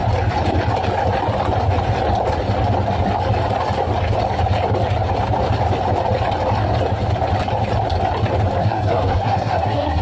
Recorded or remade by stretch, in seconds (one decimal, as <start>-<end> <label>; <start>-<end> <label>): 0.0-8.6 recorded; 8.6-10.0 remade

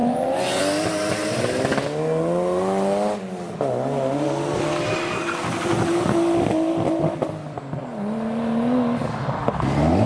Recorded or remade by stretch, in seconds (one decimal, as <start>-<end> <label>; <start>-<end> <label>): 0.0-0.6 remade; 0.6-10.1 recorded

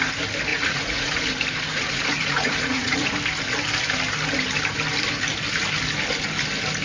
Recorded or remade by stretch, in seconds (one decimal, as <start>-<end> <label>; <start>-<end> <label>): 0.0-0.5 recorded; 0.5-1.1 remade; 1.1-1.7 recorded; 1.7-3.1 remade; 3.1-6.8 recorded

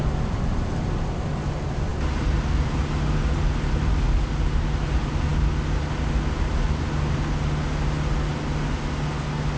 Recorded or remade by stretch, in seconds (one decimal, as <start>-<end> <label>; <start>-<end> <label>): 0.0-9.6 recorded

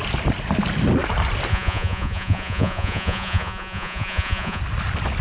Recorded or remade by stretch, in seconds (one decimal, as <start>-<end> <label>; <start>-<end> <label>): 0.0-1.5 recorded; 1.5-4.6 remade; 4.6-5.2 recorded

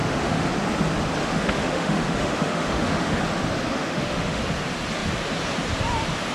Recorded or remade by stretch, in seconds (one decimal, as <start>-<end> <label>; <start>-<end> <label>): 0.0-0.5 remade; 0.5-1.2 recorded; 1.2-3.2 remade; 3.2-3.7 recorded; 3.7-4.4 remade; 4.4-6.3 recorded

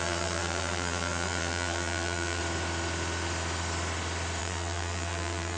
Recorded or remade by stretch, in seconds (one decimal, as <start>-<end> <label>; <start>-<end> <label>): 0.0-2.4 remade; 2.4-4.4 recorded; 4.4-5.6 remade

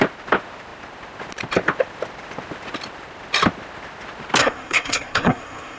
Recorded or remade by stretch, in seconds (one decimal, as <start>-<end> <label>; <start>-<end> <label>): 0.0-4.4 recorded; 4.4-5.8 remade